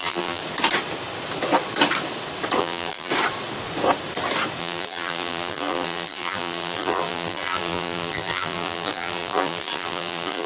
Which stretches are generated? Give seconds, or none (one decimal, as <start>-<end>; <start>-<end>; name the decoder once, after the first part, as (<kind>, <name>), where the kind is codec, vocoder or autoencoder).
0.0-0.4 (vocoder, BigVGAN v2); 2.6-3.1; 4.6-10.5

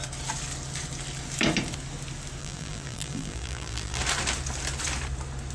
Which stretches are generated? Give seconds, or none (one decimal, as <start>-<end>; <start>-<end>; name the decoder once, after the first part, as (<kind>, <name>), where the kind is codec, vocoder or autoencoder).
2.4-4.0 (vocoder, BigVGAN v2)

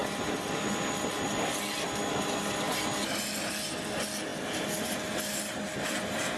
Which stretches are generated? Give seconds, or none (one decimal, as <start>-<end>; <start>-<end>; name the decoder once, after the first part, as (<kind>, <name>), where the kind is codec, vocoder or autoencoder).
none

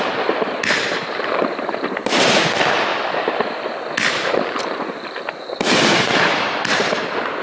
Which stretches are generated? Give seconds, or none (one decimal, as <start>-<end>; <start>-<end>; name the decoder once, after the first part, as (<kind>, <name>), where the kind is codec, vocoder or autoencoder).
0.0-2.9 (vocoder, BigVGAN v2); 4.1-7.4

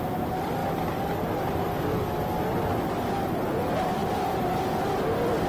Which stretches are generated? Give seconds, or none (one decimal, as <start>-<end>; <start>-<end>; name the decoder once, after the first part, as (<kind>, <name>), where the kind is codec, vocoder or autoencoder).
4.0-5.5 (vocoder, BigVGAN v2)

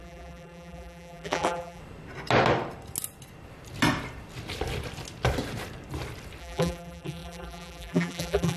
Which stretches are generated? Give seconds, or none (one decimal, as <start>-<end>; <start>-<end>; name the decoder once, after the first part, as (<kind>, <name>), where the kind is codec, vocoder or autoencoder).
0.0-1.8 (vocoder, BigVGAN v2); 6.4-8.6

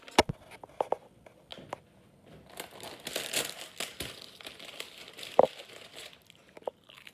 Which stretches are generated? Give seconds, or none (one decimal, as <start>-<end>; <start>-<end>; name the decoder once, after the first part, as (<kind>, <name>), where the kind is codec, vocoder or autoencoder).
none